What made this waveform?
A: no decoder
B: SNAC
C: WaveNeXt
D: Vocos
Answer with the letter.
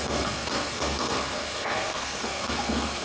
B